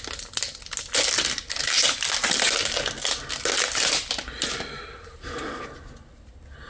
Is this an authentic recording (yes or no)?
yes